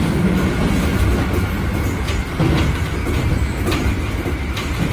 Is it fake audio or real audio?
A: real